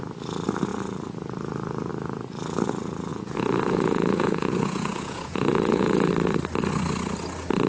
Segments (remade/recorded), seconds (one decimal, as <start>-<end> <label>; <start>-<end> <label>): 0.0-3.1 recorded; 3.1-6.1 remade; 6.1-7.7 recorded